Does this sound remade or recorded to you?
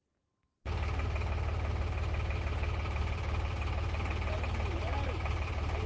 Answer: recorded